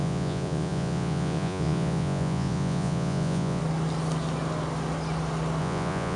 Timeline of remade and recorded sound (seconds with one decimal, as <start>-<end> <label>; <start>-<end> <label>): 0.0-3.6 remade; 3.6-5.6 recorded; 5.6-6.2 remade